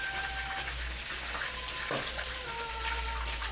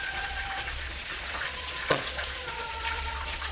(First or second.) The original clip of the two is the first